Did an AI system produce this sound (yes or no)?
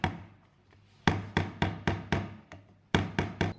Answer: no